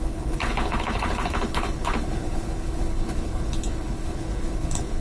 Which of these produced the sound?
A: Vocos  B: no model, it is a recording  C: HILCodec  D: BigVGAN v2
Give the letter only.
C